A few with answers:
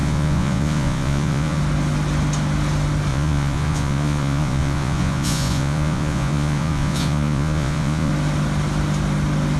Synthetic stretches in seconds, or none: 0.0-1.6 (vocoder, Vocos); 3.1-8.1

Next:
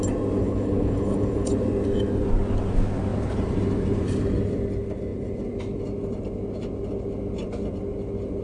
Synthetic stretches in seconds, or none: 0.4-1.5 (codec, HILCodec)

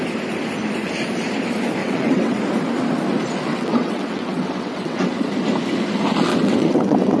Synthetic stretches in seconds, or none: 1.8-2.4 (vocoder, WaveNeXt); 3.5-5.1; 6.3-7.2